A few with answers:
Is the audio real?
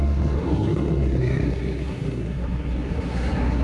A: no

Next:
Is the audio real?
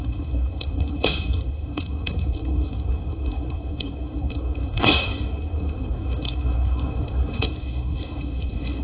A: no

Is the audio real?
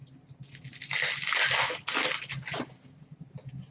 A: yes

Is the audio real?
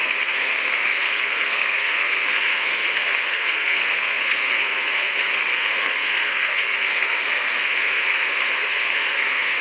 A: no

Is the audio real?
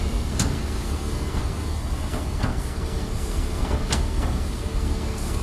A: no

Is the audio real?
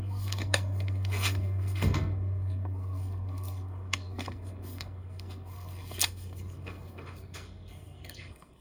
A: no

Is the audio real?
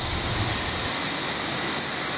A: yes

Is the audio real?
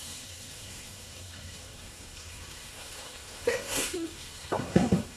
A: no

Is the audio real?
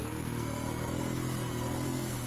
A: no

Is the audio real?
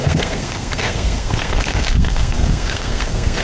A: no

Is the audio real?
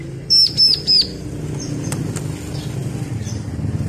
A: yes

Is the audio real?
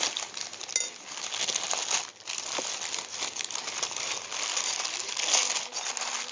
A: yes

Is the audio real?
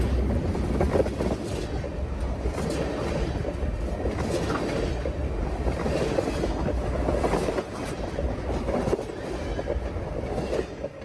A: yes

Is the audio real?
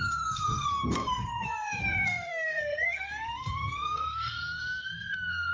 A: no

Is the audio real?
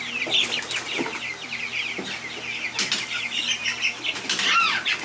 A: yes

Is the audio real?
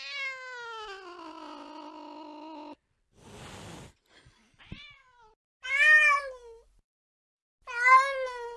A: yes